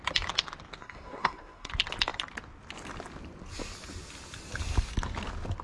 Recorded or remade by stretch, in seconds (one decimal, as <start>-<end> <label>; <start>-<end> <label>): 0.0-0.8 recorded; 0.8-1.7 remade; 1.7-5.6 recorded